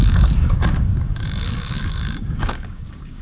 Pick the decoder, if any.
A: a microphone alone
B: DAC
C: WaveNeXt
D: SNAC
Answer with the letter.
B